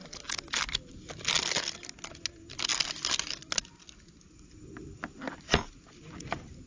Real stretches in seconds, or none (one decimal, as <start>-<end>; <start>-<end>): 0.0-6.7